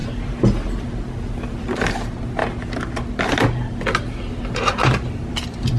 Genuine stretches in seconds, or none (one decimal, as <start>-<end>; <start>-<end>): 0.0-5.8